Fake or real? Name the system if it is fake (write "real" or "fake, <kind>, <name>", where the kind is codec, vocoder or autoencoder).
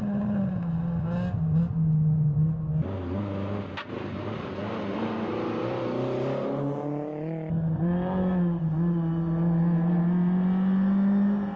real